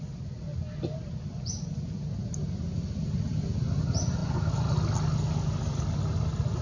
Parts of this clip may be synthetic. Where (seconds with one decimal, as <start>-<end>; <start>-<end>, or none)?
none